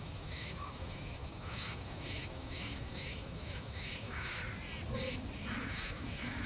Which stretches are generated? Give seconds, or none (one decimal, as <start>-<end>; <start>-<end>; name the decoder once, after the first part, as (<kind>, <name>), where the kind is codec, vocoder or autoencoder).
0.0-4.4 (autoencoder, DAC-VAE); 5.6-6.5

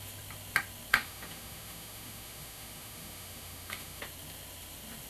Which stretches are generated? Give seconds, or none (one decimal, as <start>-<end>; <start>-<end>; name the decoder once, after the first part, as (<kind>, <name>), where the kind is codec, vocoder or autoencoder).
0.9-4.0 (autoencoder, DAC-VAE)

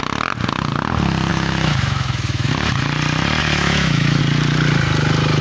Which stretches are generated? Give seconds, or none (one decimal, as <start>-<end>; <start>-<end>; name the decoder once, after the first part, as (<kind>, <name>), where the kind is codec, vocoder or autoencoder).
1.3-2.5 (autoencoder, DAC-VAE); 3.4-4.2

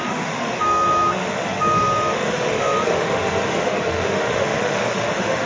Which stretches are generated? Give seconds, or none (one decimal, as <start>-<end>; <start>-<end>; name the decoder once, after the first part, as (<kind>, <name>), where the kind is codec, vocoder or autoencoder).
0.0-5.5 (autoencoder, DAC-VAE)

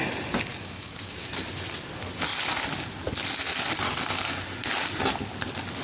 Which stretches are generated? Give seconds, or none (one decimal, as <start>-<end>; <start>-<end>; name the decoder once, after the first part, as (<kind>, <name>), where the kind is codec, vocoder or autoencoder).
0.5-1.3 (autoencoder, DAC-VAE)